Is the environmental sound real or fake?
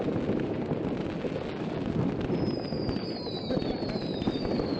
real